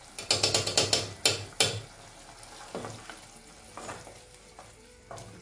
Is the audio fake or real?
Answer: real